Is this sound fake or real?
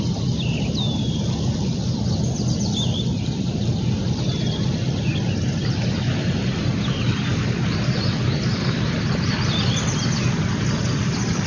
fake